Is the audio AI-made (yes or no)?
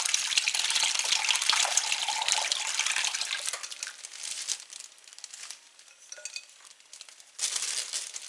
no